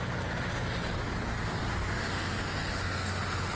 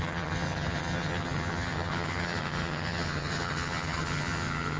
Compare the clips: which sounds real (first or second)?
first